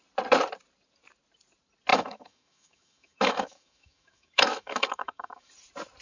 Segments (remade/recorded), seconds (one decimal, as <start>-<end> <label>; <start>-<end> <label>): 0.0-1.9 recorded; 1.9-5.5 remade; 5.5-6.0 recorded